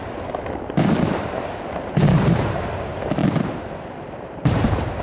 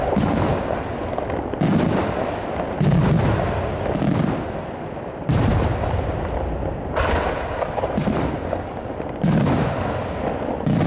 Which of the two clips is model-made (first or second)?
first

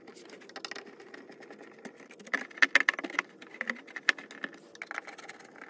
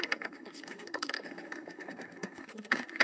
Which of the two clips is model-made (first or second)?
second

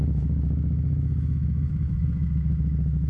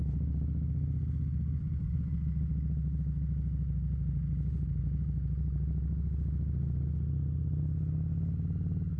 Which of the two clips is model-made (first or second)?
first